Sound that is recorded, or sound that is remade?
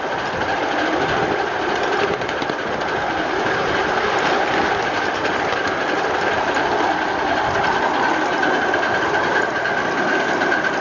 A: recorded